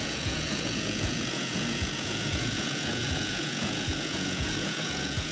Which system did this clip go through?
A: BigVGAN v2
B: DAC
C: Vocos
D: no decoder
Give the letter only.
C